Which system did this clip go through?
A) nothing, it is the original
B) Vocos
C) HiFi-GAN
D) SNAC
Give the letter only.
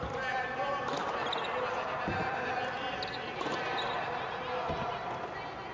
A